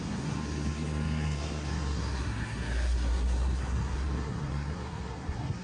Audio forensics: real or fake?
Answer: fake